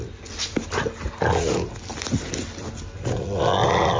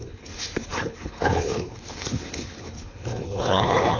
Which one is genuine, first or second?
first